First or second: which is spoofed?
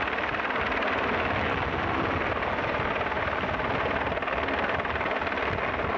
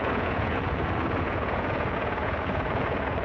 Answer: second